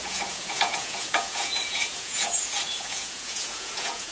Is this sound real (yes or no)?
no